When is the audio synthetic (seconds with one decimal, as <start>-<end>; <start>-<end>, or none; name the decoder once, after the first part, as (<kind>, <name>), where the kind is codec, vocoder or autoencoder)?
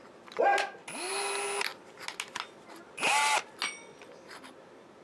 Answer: none